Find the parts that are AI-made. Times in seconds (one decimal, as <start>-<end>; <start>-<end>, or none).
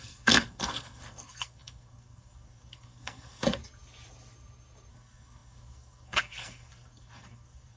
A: 0.0-3.6; 4.9-7.8